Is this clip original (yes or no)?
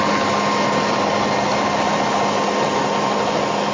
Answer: yes